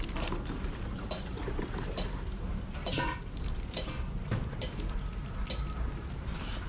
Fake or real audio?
fake